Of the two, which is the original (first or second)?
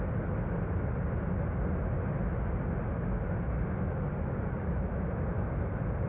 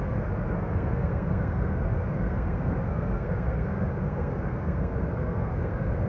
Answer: first